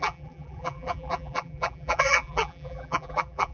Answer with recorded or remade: remade